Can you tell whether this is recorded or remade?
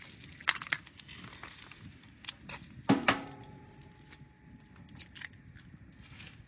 recorded